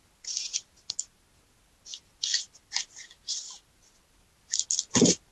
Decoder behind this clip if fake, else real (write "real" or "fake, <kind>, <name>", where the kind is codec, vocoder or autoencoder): real